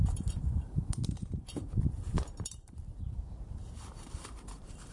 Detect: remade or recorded remade